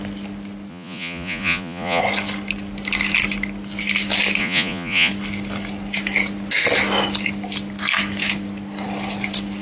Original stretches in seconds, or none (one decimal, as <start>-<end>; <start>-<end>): 0.0-0.7; 2.0-4.4; 5.1-9.6